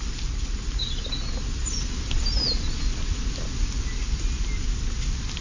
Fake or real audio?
real